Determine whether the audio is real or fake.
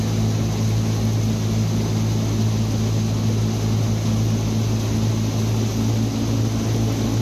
real